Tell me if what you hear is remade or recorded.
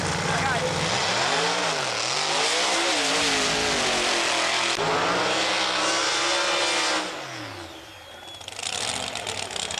recorded